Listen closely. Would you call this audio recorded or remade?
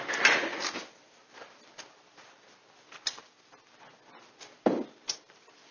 recorded